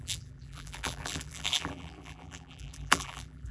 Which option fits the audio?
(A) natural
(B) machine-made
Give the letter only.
B